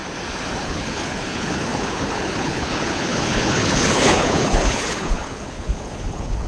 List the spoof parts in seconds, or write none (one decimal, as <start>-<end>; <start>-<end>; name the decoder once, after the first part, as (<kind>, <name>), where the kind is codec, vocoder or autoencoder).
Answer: 0.6-6.5 (codec, HILCodec)